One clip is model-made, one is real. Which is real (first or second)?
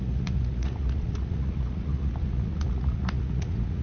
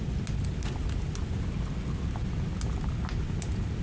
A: second